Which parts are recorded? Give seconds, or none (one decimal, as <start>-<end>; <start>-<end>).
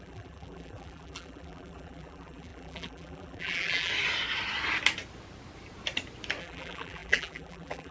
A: 3.9-6.4